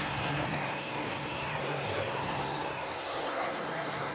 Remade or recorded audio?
remade